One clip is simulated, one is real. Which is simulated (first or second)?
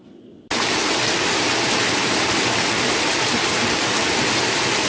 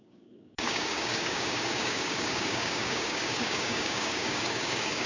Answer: second